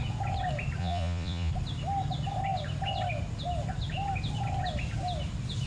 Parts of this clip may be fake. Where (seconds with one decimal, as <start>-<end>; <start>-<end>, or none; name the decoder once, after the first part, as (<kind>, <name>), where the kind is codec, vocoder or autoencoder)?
0.8-1.5 (vocoder, Vocos)